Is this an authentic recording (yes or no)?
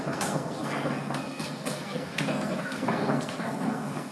no